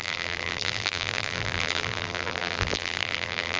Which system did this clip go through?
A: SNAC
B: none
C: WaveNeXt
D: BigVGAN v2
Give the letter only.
D